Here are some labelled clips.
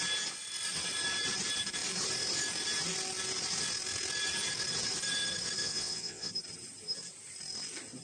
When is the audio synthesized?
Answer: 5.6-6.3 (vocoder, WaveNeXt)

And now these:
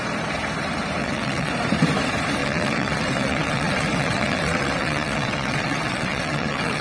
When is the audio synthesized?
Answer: 1.0-1.5 (vocoder, WaveNeXt); 2.4-6.8

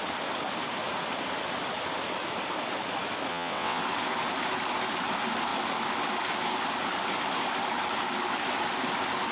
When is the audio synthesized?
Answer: 3.3-3.8 (vocoder, WaveNeXt)

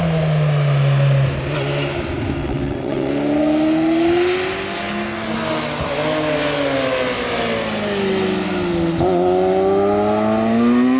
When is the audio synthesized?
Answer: 2.4-3.1 (vocoder, WaveNeXt)

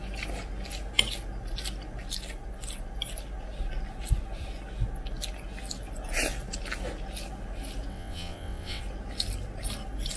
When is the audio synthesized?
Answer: 7.9-8.8 (vocoder, WaveNeXt)

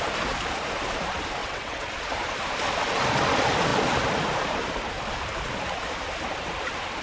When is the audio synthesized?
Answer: 1.4-1.9 (vocoder, WaveNeXt)

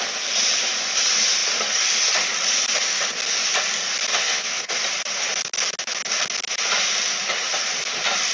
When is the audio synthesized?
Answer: 4.1-4.7 (vocoder, WaveNeXt)